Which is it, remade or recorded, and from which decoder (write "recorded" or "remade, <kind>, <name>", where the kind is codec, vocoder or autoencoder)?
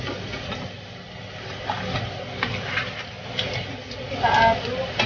recorded